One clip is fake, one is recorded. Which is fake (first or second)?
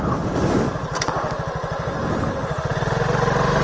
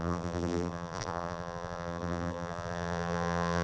second